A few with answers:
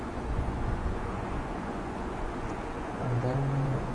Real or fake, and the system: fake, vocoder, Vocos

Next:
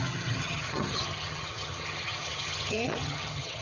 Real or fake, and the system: fake, vocoder, HiFi-GAN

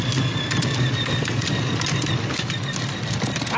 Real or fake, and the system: real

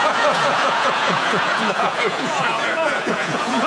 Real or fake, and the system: fake, vocoder, Vocos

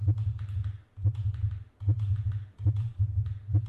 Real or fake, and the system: real